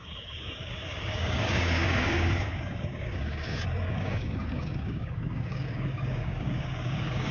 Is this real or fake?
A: fake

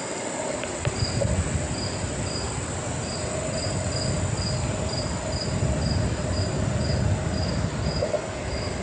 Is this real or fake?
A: real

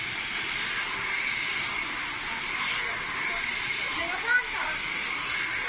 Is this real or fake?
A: real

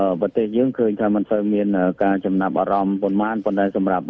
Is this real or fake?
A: real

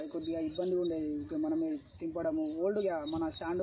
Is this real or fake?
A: real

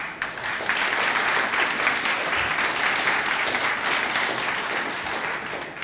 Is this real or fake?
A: real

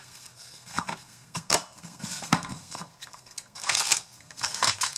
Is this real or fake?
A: fake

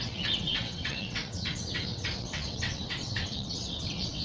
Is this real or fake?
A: fake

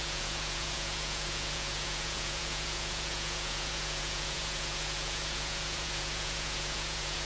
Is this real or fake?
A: fake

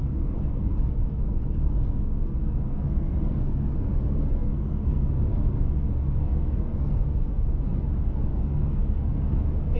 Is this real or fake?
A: fake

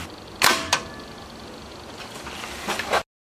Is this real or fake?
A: real